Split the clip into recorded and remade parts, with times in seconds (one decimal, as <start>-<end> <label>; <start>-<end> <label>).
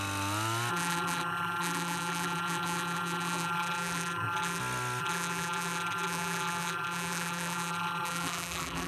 0.0-0.7 recorded; 0.7-4.6 remade; 4.6-5.0 recorded; 5.0-8.9 remade